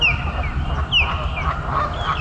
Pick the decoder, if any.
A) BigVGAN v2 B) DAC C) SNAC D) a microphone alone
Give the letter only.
D